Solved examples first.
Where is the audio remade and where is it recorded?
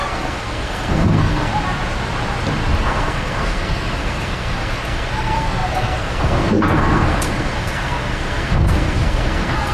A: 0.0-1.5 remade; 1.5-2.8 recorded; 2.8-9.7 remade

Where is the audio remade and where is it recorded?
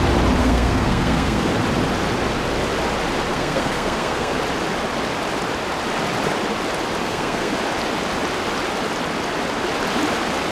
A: 0.0-0.4 recorded; 0.4-1.5 remade; 1.5-3.3 recorded; 3.3-4.4 remade; 4.4-7.0 recorded; 7.0-7.5 remade; 7.5-10.5 recorded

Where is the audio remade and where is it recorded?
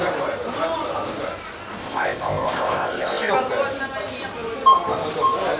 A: 0.0-1.8 recorded; 1.8-3.3 remade; 3.3-5.6 recorded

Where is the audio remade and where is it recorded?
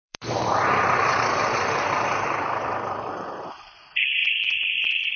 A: 0.0-5.2 remade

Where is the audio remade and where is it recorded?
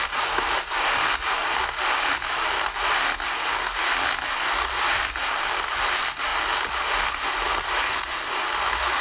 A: 0.0-9.0 recorded